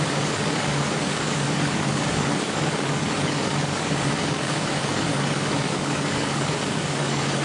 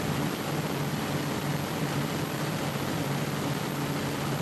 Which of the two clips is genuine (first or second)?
second